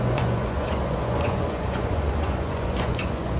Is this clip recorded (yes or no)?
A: no